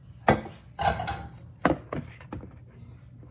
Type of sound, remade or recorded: recorded